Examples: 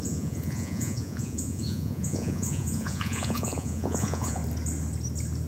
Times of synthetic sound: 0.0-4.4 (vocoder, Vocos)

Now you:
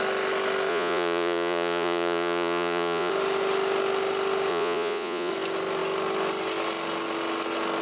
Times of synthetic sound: 0.7-3.1 (vocoder, Vocos); 4.5-5.3

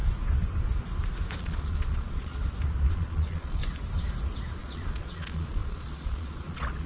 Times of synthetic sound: 1.4-2.4 (vocoder, Vocos); 2.9-3.6; 4.6-6.9

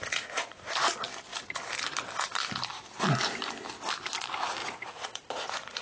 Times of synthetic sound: 0.0-0.6 (vocoder, Vocos); 4.6-5.8

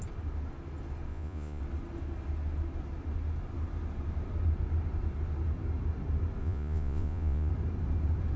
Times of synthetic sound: 1.1-1.6 (vocoder, Vocos); 6.4-7.5

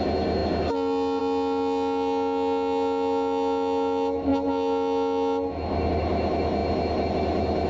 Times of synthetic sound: none